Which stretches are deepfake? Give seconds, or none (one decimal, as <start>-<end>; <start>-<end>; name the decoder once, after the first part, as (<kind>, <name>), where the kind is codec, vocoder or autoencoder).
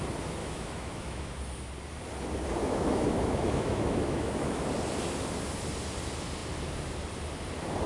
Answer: 0.4-1.3 (autoencoder, DAC-VAE); 2.6-4.7